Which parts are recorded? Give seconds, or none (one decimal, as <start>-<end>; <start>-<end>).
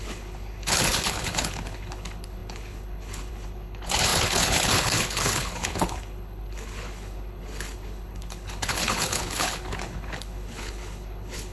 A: none